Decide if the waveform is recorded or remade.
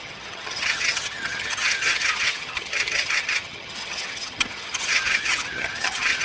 remade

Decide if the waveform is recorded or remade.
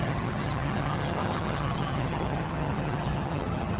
remade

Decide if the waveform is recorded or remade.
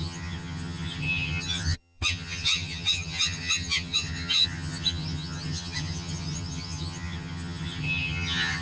remade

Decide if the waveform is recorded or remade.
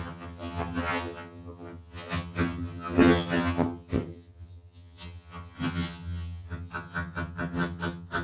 remade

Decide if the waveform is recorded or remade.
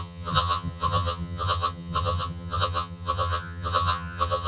remade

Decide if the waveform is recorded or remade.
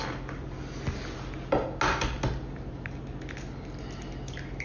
recorded